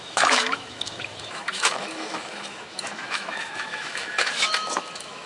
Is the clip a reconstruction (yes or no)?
yes